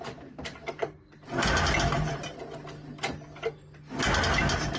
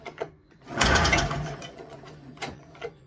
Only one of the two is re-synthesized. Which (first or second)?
second